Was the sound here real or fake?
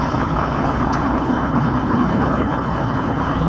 fake